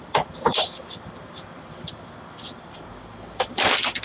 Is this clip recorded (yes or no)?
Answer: no